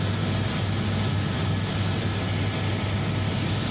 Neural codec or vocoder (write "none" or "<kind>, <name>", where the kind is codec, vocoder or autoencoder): none